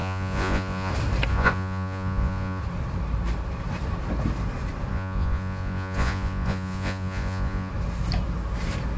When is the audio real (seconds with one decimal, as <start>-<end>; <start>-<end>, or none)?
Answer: 0.9-1.3; 2.6-4.9; 7.7-9.0